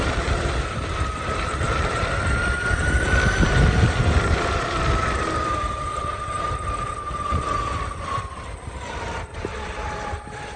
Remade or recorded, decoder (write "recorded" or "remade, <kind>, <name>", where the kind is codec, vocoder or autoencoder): remade, vocoder, BigVGAN v2